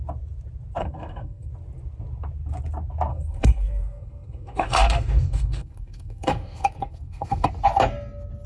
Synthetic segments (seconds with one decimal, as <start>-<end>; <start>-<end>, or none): 0.8-1.5; 3.1-7.5